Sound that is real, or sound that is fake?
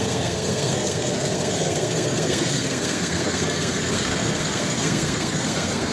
fake